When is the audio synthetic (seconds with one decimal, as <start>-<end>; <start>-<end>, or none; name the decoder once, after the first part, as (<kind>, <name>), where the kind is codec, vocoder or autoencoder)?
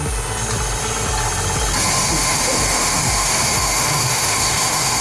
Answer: 2.0-5.0 (autoencoder, DAC-VAE)